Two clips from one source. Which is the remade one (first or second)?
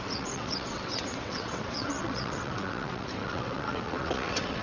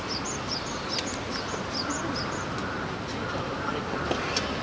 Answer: first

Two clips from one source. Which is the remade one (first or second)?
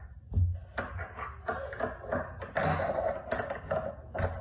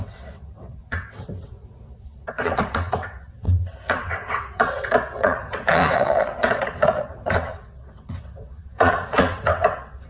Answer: second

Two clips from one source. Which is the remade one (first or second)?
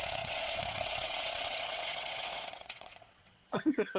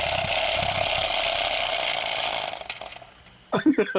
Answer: first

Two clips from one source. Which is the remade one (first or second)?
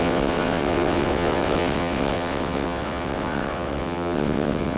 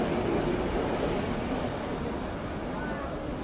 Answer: first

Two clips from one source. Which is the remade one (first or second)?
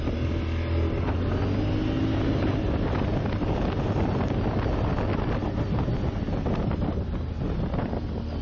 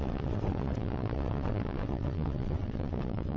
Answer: second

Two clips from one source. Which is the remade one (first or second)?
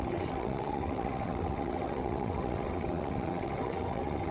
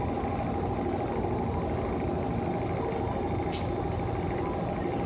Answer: first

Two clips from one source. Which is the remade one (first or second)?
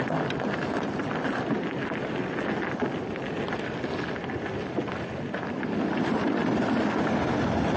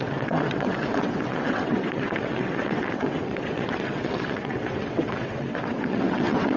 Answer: second